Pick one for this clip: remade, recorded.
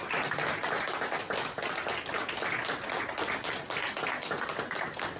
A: recorded